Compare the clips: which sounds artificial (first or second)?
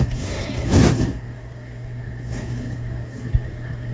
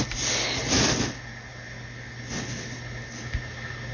first